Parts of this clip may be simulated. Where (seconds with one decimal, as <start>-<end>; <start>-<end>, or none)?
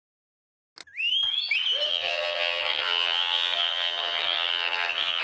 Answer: 1.9-5.2